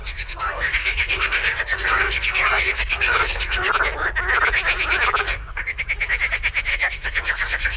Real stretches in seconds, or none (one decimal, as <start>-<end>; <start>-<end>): 3.7-5.2; 5.8-6.7